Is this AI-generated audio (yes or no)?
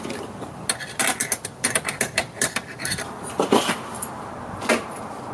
no